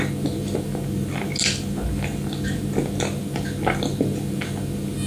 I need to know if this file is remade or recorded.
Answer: recorded